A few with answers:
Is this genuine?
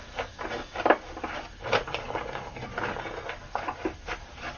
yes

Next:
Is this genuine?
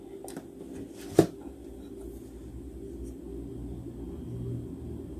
yes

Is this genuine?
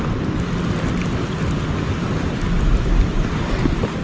yes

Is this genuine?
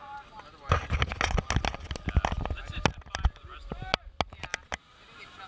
yes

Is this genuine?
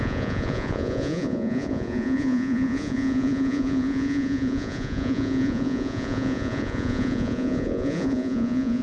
no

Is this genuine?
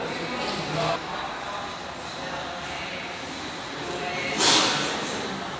yes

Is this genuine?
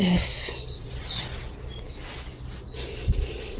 yes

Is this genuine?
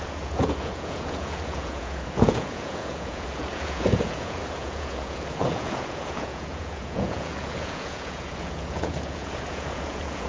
no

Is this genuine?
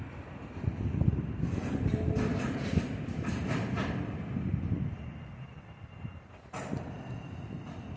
yes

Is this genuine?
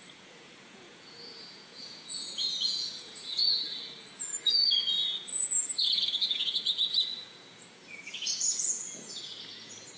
no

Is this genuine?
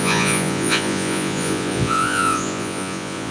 no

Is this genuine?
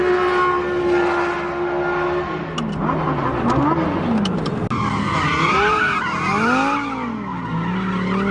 yes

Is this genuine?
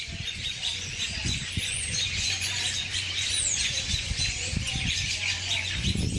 no